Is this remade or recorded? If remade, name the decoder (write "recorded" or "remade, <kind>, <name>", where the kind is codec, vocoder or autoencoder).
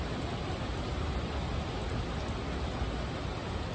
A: recorded